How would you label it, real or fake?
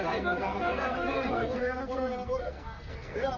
fake